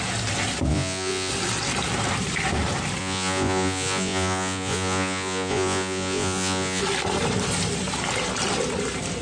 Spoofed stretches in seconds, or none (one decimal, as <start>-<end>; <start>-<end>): 0.7-1.3; 3.0-6.8